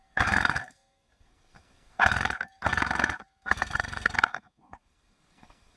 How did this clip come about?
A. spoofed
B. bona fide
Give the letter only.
A